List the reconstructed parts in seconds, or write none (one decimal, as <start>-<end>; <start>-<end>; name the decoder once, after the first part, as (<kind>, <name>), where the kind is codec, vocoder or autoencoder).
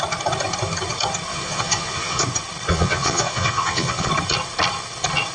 1.3-2.2 (vocoder, Vocos); 2.7-4.1